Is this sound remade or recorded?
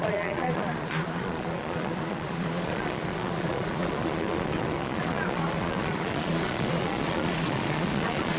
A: remade